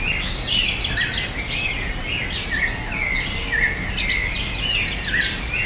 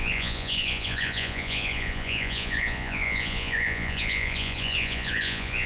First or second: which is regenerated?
second